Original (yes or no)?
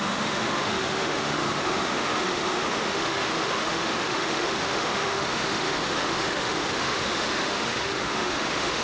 no